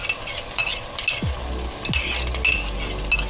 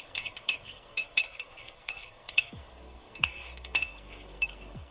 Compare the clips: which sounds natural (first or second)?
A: first